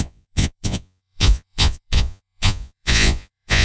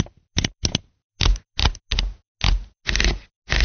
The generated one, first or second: first